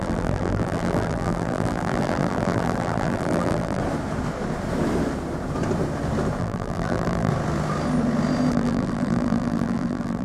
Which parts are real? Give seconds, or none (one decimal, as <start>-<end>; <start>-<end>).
3.8-6.4; 7.3-8.5